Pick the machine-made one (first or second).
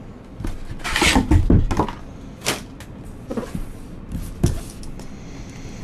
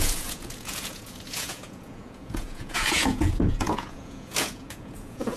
second